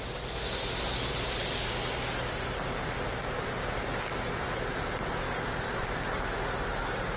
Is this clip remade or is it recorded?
recorded